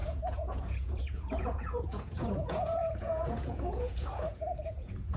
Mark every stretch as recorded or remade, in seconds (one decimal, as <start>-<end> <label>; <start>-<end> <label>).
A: 0.0-5.2 remade